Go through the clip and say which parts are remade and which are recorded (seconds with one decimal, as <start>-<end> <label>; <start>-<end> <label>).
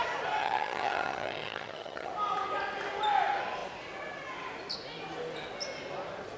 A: 0.0-0.4 recorded; 0.4-2.1 remade; 2.1-6.4 recorded